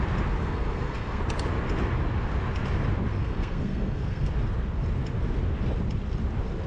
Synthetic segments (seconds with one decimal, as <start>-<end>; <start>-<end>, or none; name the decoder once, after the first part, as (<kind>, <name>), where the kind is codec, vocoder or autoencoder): 0.4-1.2 (codec, SNAC); 3.2-4.3